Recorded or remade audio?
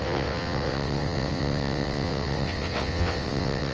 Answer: remade